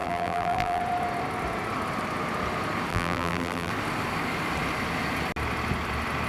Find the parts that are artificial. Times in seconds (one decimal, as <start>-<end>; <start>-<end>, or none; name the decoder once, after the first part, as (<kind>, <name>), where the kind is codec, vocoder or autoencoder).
0.0-0.8 (vocoder, BigVGAN v2); 2.9-3.7